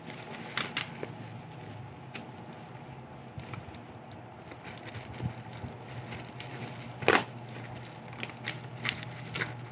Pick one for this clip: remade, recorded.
recorded